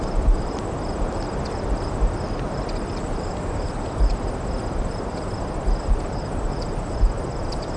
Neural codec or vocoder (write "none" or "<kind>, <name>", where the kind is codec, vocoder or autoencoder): vocoder, BigVGAN v2